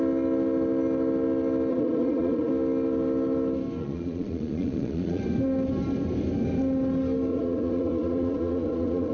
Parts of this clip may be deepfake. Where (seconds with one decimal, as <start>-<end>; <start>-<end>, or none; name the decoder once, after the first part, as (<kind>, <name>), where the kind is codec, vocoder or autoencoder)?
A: 1.7-2.5 (vocoder, Vocos); 3.8-5.2; 7.3-9.1